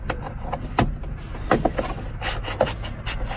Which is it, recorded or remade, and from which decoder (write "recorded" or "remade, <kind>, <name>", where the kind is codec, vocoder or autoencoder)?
recorded